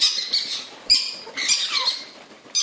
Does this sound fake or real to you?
real